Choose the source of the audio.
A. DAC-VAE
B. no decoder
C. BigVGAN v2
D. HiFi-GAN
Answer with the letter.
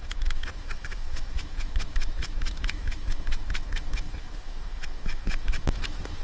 A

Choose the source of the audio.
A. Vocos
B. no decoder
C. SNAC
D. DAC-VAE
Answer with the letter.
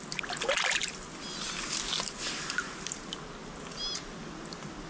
B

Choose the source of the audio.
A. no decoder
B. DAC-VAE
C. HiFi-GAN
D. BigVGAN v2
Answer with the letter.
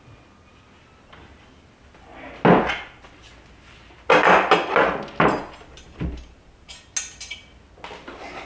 A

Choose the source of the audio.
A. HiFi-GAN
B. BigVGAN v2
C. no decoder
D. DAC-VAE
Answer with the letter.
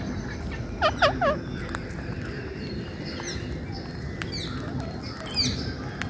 C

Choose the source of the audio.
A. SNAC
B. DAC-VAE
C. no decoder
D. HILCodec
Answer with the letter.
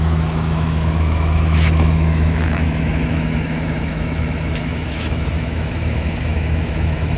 B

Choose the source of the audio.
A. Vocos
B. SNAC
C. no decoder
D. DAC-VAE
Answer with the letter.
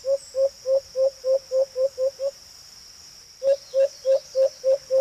C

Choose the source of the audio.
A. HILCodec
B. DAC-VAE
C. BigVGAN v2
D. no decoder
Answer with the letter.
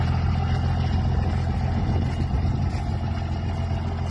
D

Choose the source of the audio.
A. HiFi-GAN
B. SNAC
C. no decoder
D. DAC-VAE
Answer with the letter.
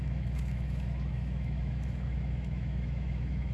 D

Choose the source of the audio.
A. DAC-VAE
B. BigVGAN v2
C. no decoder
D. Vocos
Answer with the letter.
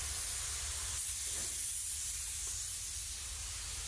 C